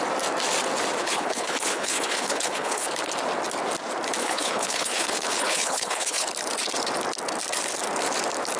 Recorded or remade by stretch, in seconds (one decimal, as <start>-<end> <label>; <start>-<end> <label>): 0.0-1.0 recorded; 1.0-2.9 remade; 2.9-4.2 recorded; 4.2-6.3 remade; 6.3-8.6 recorded

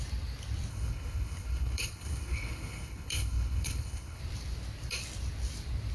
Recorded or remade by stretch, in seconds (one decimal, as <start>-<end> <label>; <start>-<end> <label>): 0.0-0.7 recorded; 0.7-4.2 remade; 4.2-5.9 recorded

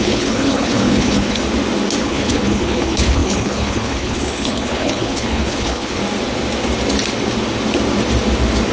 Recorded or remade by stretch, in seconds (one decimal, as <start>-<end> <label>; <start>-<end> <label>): 0.0-1.4 remade; 1.4-2.0 recorded; 2.0-6.0 remade; 6.0-8.7 recorded